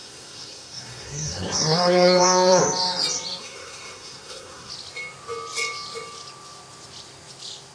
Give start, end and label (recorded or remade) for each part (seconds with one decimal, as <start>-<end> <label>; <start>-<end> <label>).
0.0-2.6 remade; 2.6-3.4 recorded; 3.4-4.7 remade; 4.7-7.7 recorded